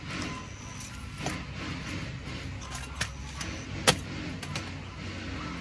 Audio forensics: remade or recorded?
recorded